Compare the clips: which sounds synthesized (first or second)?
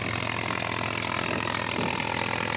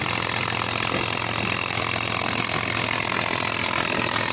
second